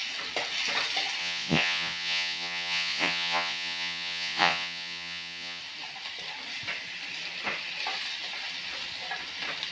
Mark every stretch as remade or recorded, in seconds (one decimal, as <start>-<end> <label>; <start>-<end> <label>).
0.0-1.2 recorded; 1.2-5.6 remade; 5.6-9.7 recorded